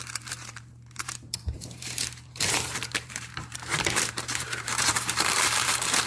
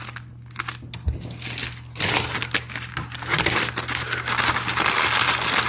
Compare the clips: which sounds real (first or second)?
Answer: second